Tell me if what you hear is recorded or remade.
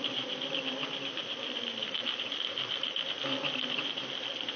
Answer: recorded